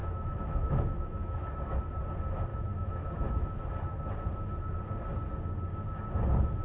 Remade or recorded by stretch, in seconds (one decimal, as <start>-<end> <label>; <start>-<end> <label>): 0.0-1.8 remade; 1.8-2.5 recorded; 2.5-3.6 remade; 3.6-6.6 recorded